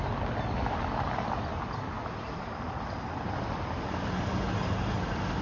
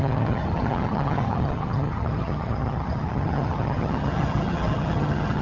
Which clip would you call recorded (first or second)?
first